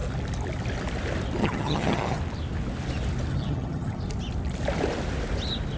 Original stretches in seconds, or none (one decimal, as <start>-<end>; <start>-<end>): 0.0-1.4; 2.2-3.3; 4.0-5.8